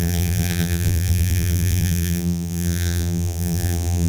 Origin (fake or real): fake